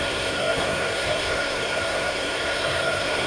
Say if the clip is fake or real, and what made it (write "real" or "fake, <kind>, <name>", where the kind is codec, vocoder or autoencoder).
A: fake, codec, SNAC